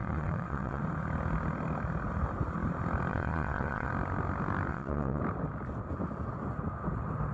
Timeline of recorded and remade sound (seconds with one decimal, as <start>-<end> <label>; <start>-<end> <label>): 0.0-0.8 remade; 0.8-3.1 recorded; 3.1-3.9 remade; 3.9-4.7 recorded; 4.7-5.2 remade; 5.2-7.3 recorded